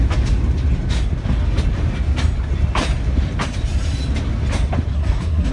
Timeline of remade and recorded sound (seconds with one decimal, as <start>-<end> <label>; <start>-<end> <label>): 0.0-4.9 recorded; 4.9-5.5 remade